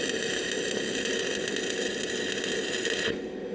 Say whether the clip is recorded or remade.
recorded